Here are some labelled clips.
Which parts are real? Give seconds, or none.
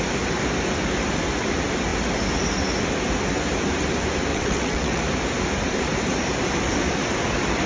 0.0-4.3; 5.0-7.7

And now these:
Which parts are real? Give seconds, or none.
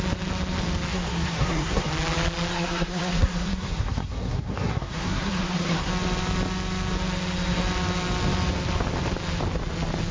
0.0-0.9; 1.9-2.5; 5.9-10.1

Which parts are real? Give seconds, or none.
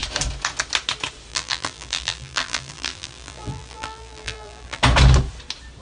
0.0-1.3; 4.8-5.8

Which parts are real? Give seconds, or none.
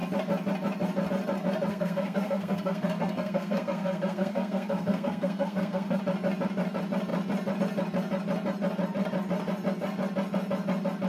0.0-1.7; 6.0-11.1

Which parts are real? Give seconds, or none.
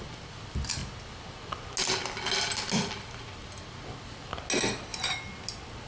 0.0-5.9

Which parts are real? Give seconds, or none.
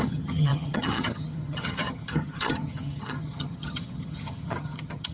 none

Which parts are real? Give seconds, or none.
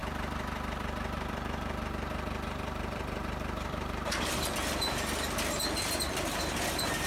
4.3-7.1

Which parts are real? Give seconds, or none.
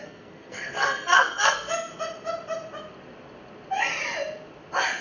1.9-5.0